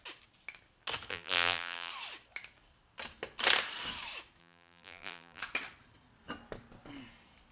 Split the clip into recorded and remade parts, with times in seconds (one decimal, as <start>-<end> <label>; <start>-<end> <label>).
0.0-1.1 recorded; 1.1-1.9 remade; 1.9-4.4 recorded; 4.4-5.4 remade; 5.4-7.5 recorded